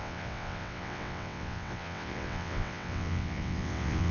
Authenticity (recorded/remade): remade